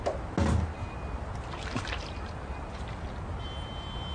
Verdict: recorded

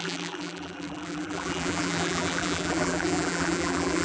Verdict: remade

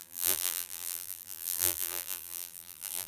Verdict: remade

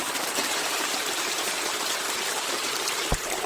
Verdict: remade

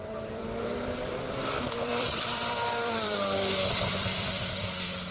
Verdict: remade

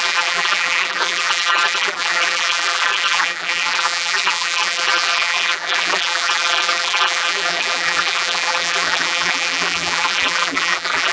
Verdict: remade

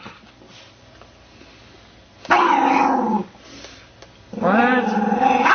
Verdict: recorded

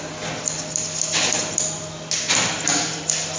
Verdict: recorded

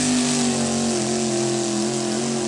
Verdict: recorded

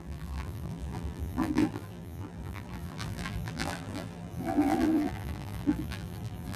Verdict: remade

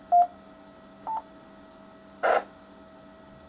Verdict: recorded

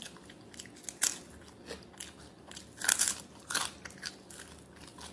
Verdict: recorded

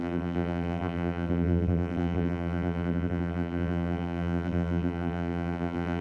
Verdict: remade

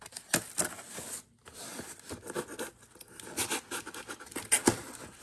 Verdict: recorded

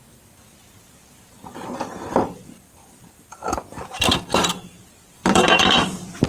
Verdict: remade